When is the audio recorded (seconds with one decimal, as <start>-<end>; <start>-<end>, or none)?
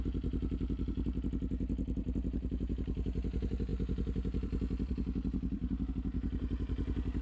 0.0-7.2